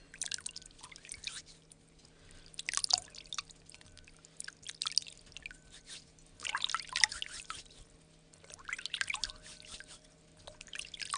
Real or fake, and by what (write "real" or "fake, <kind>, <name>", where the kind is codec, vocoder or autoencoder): real